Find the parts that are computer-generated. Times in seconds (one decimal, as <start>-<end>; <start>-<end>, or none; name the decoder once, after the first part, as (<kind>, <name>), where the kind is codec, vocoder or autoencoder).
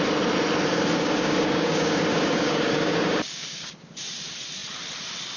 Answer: 0.7-3.9 (codec, DAC)